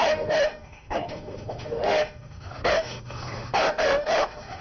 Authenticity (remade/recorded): remade